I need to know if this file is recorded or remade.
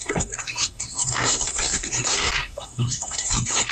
remade